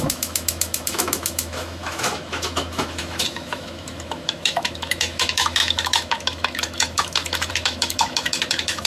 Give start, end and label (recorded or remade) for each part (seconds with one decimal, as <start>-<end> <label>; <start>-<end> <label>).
0.0-8.9 remade